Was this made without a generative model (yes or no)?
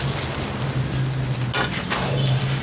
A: yes